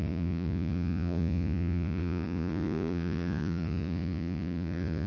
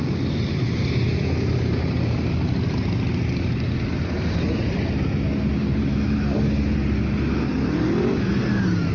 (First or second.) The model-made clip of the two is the first